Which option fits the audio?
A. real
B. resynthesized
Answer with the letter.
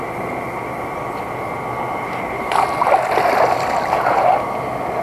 A